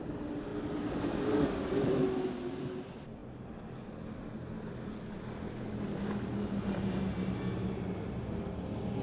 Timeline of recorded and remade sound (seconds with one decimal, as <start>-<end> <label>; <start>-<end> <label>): 0.0-9.0 recorded